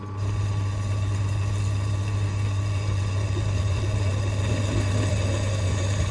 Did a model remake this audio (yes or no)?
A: no